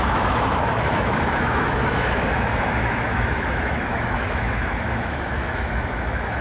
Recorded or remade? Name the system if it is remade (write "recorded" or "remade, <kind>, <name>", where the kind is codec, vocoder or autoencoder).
remade, autoencoder, DAC-VAE